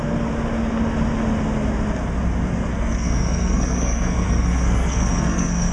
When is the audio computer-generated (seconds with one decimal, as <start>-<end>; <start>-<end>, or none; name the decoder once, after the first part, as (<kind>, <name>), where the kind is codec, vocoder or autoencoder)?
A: 2.7-5.7 (codec, SNAC)